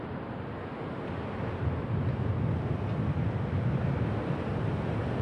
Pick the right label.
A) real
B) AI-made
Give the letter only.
A